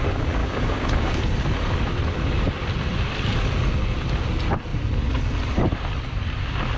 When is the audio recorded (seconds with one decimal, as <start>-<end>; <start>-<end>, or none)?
0.0-0.4; 1.2-6.8